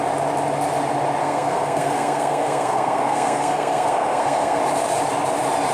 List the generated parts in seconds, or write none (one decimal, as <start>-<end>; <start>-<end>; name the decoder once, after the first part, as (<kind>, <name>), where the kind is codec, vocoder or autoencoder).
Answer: 1.2-4.6 (codec, SNAC)